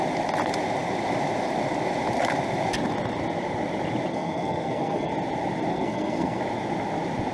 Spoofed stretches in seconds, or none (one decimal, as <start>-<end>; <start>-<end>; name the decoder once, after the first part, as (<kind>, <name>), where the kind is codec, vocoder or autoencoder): 4.1-5.1 (codec, SNAC); 5.7-6.4